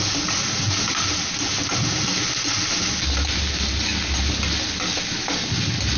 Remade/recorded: recorded